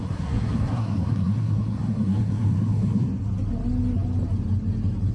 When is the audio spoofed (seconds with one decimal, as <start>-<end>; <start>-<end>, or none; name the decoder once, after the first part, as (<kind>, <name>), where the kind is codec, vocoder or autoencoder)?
0.0-3.1 (codec, SNAC)